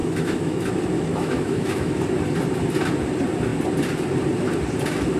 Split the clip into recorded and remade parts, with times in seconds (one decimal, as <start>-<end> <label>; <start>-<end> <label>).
0.0-0.7 remade; 0.7-1.1 recorded; 1.1-2.0 remade; 2.0-5.2 recorded